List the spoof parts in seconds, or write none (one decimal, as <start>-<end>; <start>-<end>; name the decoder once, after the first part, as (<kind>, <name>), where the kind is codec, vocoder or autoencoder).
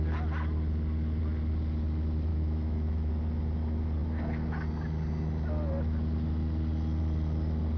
2.3-3.1 (autoencoder, DAC-VAE)